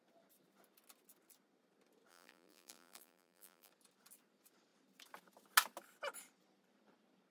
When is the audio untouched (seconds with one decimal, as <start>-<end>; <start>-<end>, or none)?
0.0-2.1; 3.7-7.3